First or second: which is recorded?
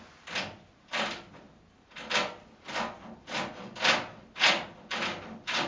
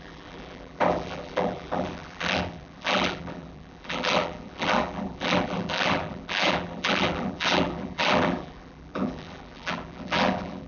first